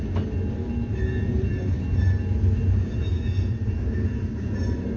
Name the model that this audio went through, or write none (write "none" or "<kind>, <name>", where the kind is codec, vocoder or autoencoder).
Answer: none